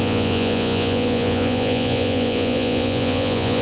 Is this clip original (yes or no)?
no